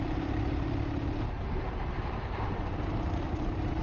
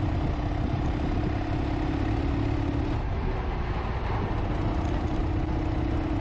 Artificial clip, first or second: first